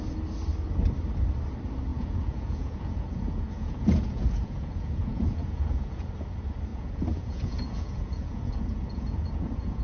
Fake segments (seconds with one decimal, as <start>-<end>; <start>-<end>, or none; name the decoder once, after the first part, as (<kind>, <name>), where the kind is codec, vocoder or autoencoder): 1.9-6.1 (vocoder, Vocos); 6.7-9.8